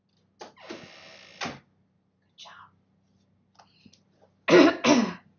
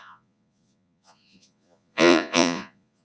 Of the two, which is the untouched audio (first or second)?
first